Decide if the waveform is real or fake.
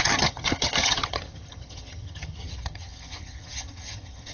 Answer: fake